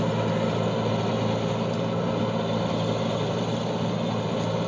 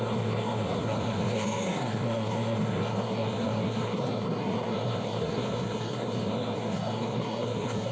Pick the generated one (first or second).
second